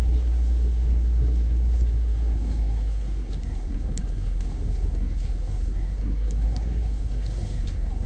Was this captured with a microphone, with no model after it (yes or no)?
no